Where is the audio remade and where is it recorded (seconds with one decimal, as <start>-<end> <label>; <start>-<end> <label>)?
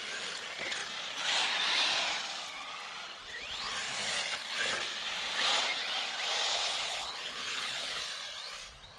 0.0-6.5 recorded; 6.5-8.0 remade; 8.0-9.0 recorded